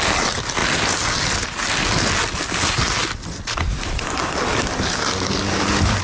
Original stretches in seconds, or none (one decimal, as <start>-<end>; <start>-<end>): 0.0-6.0